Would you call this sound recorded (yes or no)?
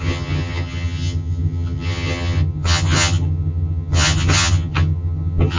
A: no